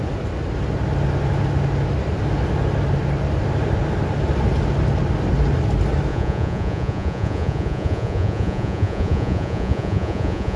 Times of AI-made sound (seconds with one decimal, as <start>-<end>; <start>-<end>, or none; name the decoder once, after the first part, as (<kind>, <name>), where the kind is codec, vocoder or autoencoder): 6.1-10.6 (vocoder, Vocos)